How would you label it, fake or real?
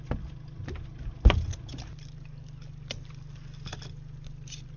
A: real